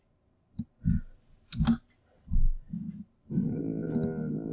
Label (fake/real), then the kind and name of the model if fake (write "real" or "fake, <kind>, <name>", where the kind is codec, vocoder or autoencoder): real